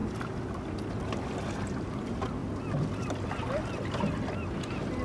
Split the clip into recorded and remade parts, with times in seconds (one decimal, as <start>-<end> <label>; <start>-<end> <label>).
0.0-5.0 recorded